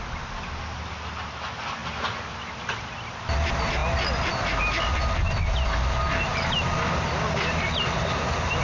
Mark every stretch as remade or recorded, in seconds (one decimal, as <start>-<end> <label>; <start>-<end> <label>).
0.0-8.6 recorded